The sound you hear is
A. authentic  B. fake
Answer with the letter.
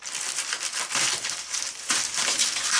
B